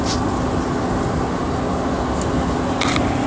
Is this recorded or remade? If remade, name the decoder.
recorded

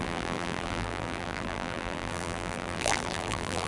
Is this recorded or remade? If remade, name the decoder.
remade, vocoder, BigVGAN v2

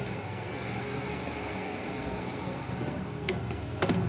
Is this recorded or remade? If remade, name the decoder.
remade, codec, SNAC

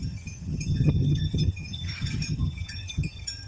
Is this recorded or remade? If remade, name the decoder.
remade, vocoder, HiFi-GAN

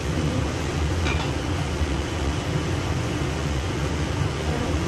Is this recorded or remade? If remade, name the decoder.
remade, vocoder, Vocos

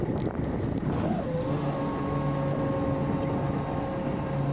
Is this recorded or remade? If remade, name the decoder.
recorded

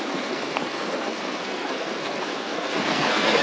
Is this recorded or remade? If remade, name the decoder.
remade, codec, SNAC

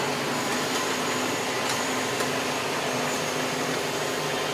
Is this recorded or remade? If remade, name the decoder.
recorded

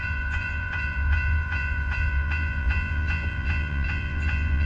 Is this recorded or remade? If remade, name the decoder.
remade, vocoder, Vocos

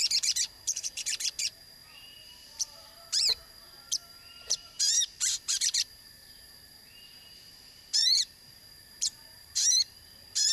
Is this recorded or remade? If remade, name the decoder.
remade, vocoder, BigVGAN v2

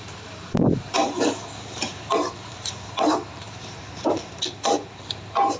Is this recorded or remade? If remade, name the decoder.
remade, vocoder, BigVGAN v2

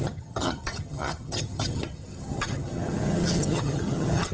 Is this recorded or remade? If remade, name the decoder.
remade, vocoder, HiFi-GAN